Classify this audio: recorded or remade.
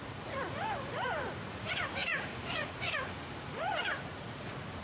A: remade